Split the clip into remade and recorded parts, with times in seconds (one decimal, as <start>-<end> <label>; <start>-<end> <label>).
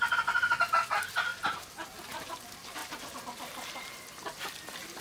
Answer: 0.0-5.0 recorded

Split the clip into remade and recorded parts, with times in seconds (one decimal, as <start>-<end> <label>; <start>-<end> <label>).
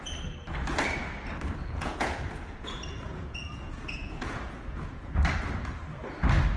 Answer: 0.0-1.6 recorded; 1.6-5.2 remade; 5.2-6.6 recorded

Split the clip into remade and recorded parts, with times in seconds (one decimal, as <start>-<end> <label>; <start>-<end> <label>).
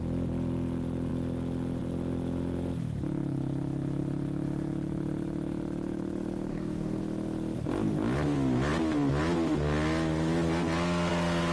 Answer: 0.0-6.5 recorded; 6.5-7.0 remade; 7.0-11.5 recorded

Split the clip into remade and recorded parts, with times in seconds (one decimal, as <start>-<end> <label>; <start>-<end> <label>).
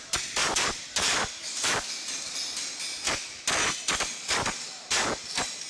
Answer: 0.0-0.4 recorded; 0.4-1.5 remade; 1.5-5.7 recorded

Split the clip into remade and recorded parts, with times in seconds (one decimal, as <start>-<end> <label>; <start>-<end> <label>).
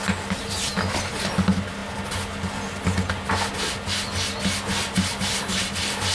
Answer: 0.0-6.1 recorded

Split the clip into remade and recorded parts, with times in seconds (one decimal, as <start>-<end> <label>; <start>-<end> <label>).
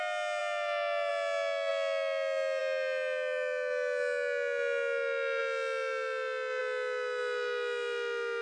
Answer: 0.0-8.4 recorded